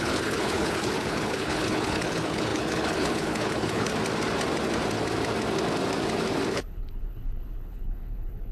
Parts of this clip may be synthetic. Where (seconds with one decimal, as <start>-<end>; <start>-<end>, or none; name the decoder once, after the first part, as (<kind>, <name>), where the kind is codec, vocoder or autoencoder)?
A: 0.0-3.9 (codec, HILCodec); 6.5-8.5